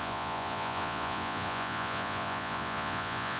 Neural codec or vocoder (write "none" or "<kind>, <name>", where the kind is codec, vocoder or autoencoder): vocoder, Vocos